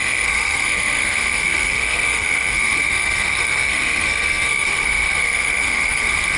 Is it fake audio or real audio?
fake